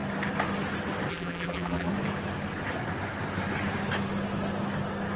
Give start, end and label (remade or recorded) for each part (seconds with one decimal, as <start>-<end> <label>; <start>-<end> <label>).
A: 0.0-1.1 recorded; 1.1-1.9 remade; 1.9-5.2 recorded